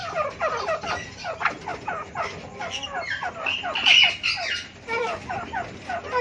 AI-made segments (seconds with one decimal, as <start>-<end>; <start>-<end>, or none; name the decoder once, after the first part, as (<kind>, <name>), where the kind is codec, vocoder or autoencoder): none